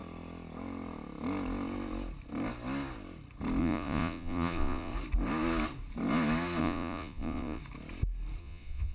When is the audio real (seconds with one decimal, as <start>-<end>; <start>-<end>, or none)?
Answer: 0.0-3.6; 4.9-6.6; 7.6-8.4